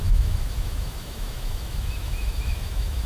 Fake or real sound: fake